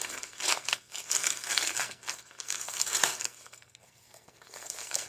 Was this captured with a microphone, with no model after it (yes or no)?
no